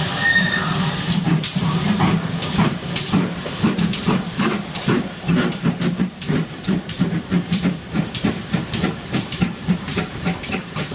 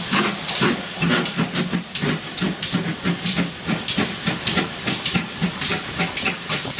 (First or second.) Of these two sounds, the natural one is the second